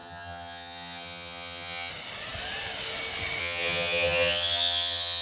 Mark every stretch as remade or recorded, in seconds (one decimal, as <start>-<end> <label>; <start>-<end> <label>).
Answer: 0.0-1.9 remade; 1.9-3.4 recorded; 3.4-5.2 remade